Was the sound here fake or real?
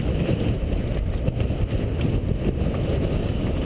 real